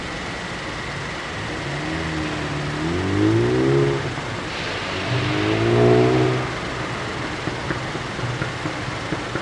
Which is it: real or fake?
real